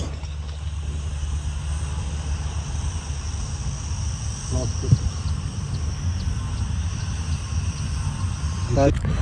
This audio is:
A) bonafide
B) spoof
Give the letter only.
A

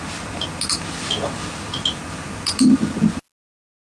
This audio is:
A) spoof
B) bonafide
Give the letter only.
B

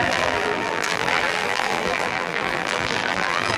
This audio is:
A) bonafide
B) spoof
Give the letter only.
B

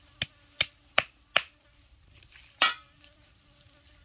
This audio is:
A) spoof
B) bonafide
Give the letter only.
B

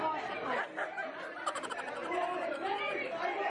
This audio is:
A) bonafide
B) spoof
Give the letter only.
B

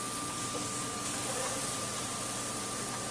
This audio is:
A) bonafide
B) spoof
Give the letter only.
A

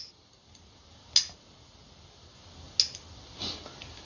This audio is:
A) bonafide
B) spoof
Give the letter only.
A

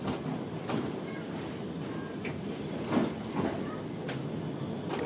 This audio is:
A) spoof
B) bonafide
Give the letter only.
B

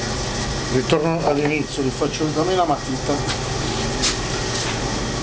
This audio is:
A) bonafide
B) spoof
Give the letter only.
A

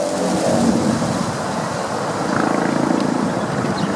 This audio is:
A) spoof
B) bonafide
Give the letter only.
B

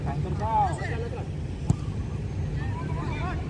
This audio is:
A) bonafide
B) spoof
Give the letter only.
A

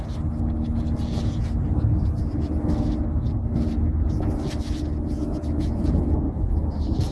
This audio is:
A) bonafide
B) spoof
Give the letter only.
A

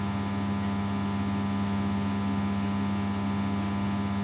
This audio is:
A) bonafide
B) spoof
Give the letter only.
A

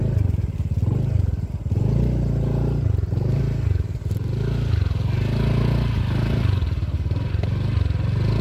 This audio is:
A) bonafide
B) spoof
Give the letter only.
A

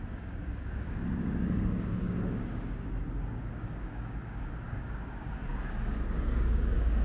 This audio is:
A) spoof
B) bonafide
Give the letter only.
A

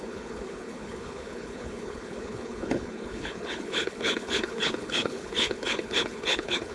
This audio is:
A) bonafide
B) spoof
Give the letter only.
B